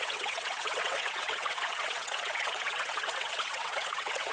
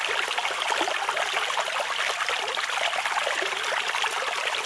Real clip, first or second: second